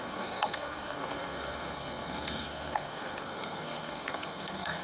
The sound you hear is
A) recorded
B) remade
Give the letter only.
B